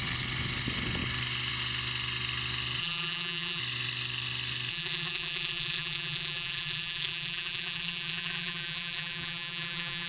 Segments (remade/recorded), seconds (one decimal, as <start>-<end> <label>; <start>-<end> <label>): 0.0-2.8 recorded; 2.8-3.6 remade; 3.6-4.7 recorded; 4.7-10.1 remade